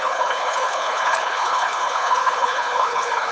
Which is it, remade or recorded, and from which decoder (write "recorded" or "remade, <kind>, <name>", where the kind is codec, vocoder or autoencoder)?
remade, codec, HILCodec